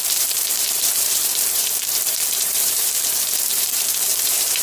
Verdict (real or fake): fake